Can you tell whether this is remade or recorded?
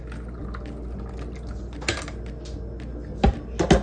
recorded